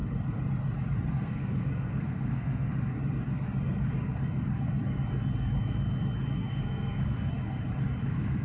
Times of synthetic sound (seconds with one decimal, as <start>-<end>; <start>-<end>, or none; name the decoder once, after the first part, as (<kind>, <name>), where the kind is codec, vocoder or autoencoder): 1.1-2.7 (codec, SNAC); 6.5-7.3; 8.0-8.4